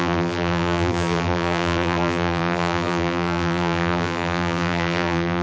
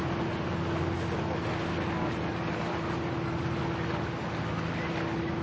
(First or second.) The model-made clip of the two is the first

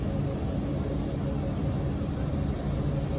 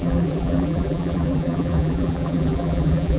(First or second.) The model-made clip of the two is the second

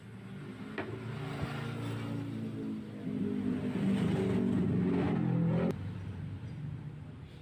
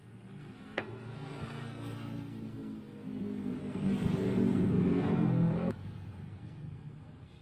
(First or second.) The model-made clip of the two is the second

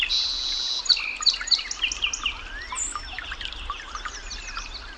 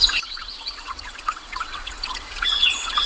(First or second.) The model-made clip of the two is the second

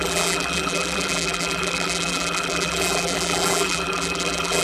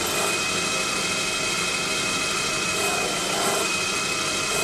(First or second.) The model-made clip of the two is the first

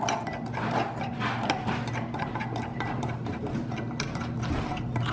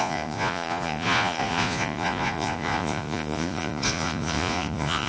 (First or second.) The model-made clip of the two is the second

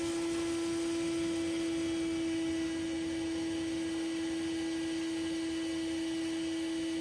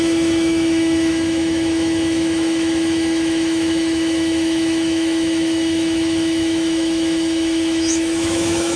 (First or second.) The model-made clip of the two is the second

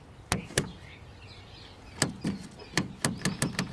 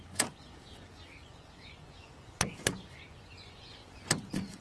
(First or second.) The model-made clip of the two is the second